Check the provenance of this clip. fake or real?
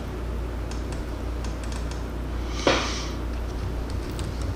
real